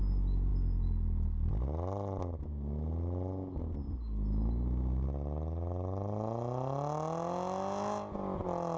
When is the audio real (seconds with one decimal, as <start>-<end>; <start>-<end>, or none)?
0.0-8.8